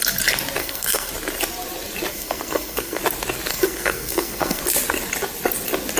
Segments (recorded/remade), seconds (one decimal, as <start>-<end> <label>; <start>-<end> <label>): 0.0-0.6 recorded; 0.6-1.1 remade; 1.1-2.1 recorded; 2.1-3.0 remade; 3.0-3.5 recorded; 3.5-4.6 remade; 4.6-6.0 recorded